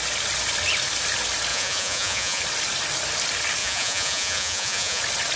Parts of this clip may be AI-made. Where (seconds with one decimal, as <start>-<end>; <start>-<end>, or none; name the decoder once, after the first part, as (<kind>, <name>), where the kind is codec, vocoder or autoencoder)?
1.5-2.4 (vocoder, Vocos); 3.6-5.0